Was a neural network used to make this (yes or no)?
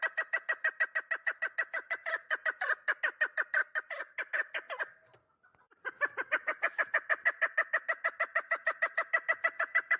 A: no